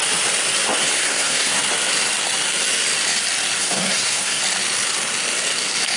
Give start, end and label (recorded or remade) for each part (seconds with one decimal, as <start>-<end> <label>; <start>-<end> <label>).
0.0-0.8 recorded; 0.8-1.6 remade; 1.6-3.6 recorded; 3.6-4.4 remade; 4.4-6.0 recorded